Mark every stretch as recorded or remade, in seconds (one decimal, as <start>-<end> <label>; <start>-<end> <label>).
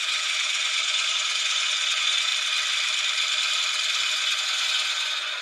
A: 0.0-2.3 remade; 2.3-4.0 recorded; 4.0-5.4 remade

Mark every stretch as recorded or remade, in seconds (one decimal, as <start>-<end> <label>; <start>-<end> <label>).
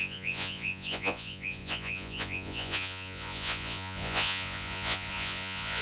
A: 0.0-5.8 remade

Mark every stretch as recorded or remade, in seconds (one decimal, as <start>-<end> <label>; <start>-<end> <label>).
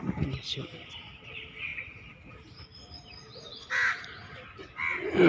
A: 0.0-3.3 recorded; 3.3-4.4 remade; 4.4-5.3 recorded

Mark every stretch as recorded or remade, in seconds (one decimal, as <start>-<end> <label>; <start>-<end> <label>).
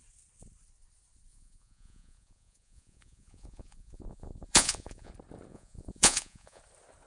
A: 0.0-1.3 recorded; 1.3-5.1 remade; 5.1-5.5 recorded; 5.5-6.6 remade; 6.6-7.1 recorded